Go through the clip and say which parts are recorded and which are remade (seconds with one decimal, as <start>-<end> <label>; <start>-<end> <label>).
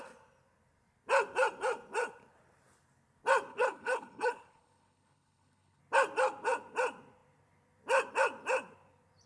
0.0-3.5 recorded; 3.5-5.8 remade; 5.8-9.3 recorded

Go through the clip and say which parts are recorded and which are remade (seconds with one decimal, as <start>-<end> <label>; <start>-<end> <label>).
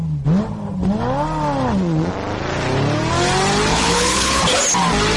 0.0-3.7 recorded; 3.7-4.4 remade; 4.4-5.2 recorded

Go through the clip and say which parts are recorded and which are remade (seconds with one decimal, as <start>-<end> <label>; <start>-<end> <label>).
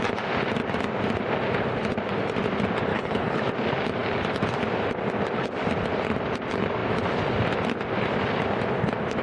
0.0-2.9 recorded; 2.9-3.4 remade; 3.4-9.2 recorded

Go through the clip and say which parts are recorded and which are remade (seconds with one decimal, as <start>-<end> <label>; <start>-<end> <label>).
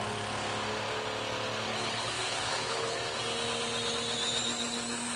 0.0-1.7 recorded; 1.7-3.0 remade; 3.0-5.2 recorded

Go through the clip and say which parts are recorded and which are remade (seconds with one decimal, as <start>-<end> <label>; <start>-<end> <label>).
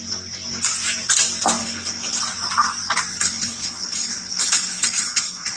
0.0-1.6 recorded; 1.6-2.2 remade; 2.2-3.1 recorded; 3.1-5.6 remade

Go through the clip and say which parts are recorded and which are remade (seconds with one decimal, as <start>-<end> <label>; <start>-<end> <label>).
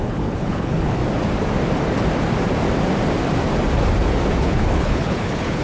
0.0-1.0 remade; 1.0-4.4 recorded; 4.4-5.6 remade